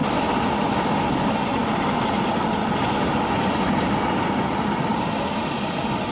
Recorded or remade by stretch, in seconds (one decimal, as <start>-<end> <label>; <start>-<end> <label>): 0.0-6.1 recorded